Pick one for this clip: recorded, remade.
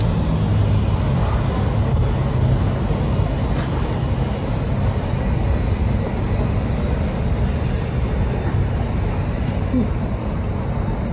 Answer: recorded